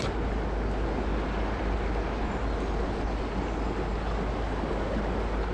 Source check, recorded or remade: recorded